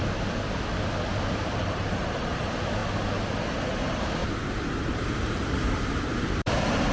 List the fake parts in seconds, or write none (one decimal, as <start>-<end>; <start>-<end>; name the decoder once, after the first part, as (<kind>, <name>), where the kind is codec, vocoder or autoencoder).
1.2-2.8 (vocoder, BigVGAN v2); 3.7-4.2; 4.8-6.9